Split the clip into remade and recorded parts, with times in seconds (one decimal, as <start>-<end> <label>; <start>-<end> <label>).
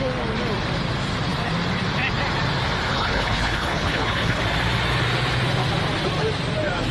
0.0-2.9 recorded; 2.9-4.4 remade; 4.4-6.9 recorded